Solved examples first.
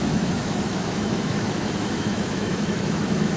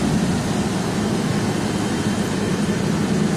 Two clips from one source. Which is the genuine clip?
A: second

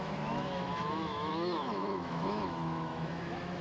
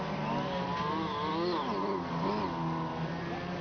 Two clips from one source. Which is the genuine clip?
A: second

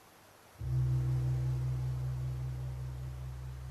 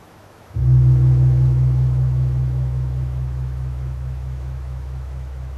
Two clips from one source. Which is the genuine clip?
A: first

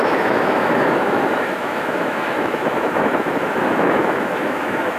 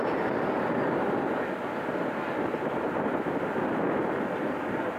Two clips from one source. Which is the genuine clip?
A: second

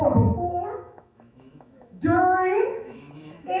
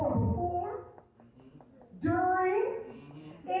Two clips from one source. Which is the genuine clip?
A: second